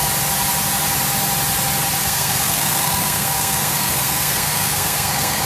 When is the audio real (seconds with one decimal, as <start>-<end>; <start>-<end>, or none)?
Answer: 0.0-2.0